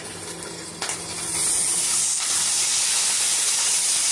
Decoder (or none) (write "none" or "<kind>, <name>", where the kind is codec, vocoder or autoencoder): none